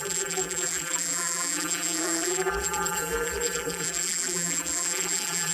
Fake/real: fake